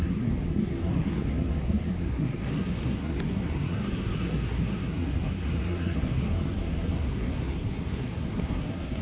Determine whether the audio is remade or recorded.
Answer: remade